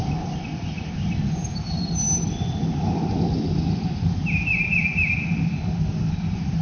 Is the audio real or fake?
real